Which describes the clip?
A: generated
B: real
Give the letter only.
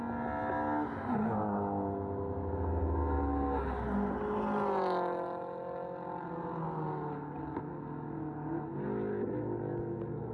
B